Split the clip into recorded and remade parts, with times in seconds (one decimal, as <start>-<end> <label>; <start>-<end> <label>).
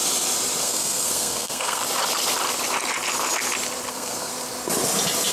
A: 0.0-0.6 recorded; 0.6-1.8 remade; 1.8-3.9 recorded; 3.9-4.3 remade; 4.3-5.3 recorded